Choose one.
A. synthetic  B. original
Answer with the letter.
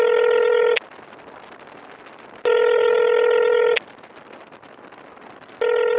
B